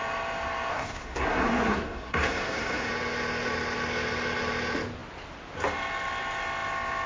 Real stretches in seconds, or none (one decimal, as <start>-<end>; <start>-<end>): 0.0-0.7; 2.9-7.1